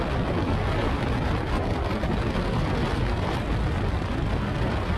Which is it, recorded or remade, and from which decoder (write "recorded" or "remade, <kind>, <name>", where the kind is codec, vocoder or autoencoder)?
recorded